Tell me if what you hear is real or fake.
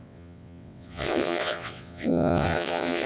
fake